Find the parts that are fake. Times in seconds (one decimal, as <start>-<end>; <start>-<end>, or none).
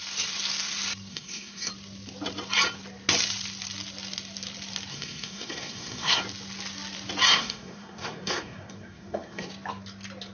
1.1-1.7; 4.9-6.2; 7.3-9.5